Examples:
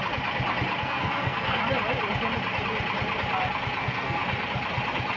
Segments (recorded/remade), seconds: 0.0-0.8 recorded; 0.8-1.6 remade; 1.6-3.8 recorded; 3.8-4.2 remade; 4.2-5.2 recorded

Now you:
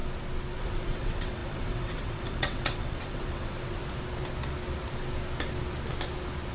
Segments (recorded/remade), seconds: 0.0-0.6 recorded; 0.6-3.8 remade; 3.8-6.5 recorded